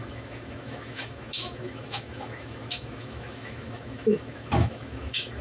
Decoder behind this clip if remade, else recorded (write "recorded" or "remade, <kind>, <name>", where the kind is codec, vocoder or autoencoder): remade, autoencoder, DAC-VAE